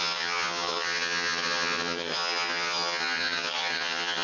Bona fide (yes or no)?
no